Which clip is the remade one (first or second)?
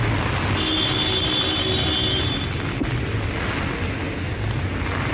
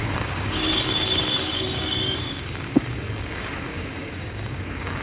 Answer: second